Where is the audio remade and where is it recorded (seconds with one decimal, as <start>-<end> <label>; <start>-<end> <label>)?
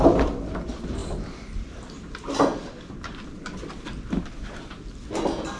0.0-5.6 recorded